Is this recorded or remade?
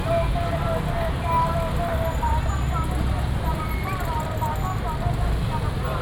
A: recorded